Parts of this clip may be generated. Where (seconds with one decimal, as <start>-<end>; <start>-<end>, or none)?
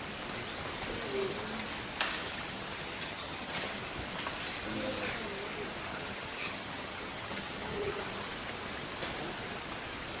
2.2-3.8; 5.9-8.0